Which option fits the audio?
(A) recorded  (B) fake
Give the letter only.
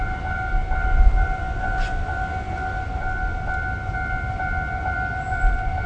A